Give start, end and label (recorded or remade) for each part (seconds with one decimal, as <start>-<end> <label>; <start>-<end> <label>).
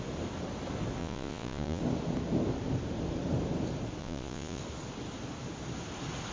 0.0-1.0 recorded; 1.0-1.8 remade; 1.8-4.0 recorded; 4.0-4.6 remade; 4.6-6.3 recorded